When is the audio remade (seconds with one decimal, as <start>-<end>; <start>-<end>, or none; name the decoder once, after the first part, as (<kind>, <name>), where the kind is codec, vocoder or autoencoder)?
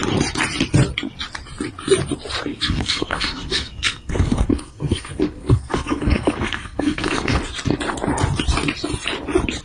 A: 2.5-7.4 (codec, SNAC)